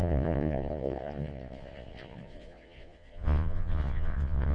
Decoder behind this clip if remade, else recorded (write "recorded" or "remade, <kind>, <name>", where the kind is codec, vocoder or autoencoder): remade, vocoder, Vocos